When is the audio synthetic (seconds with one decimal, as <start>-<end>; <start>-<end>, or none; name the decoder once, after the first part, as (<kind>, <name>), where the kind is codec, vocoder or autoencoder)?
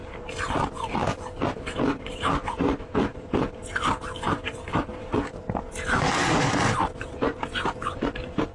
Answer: 0.0-3.9 (vocoder, BigVGAN v2); 4.9-5.7